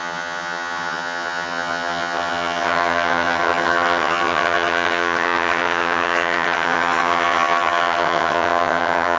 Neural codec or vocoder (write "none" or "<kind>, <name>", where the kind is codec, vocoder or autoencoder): vocoder, HiFi-GAN